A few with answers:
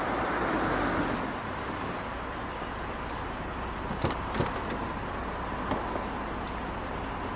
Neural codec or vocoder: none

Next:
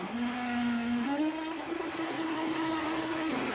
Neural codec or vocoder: codec, SNAC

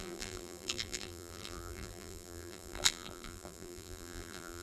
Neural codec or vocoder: vocoder, BigVGAN v2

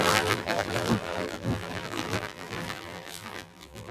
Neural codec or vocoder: vocoder, BigVGAN v2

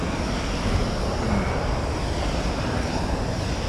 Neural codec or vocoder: none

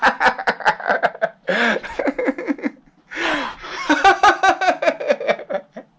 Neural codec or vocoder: none